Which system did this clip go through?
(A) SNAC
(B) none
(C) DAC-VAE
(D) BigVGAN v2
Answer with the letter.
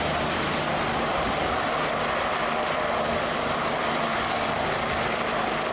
B